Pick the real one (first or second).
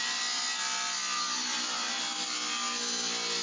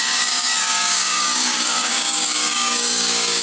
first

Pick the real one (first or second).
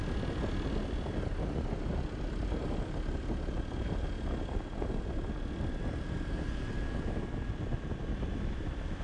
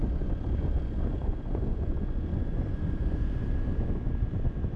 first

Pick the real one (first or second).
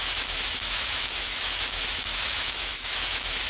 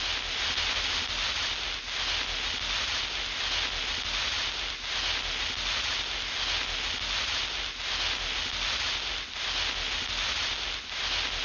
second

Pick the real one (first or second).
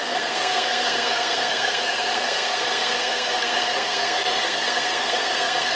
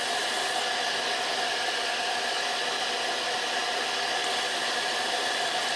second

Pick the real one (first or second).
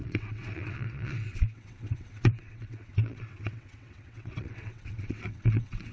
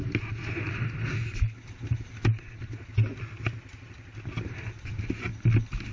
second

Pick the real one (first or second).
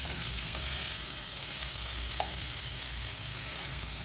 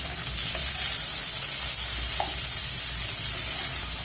second